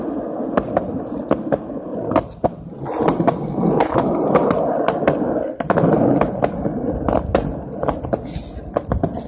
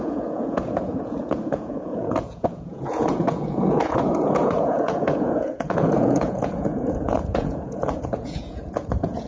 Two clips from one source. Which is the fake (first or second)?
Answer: second